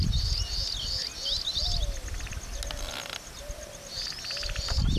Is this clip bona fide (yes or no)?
yes